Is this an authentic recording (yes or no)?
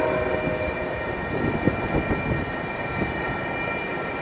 yes